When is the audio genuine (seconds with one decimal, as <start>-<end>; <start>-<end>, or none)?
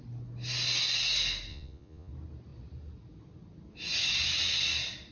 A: 0.0-1.5; 2.1-5.1